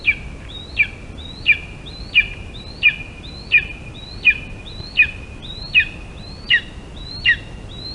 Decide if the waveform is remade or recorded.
recorded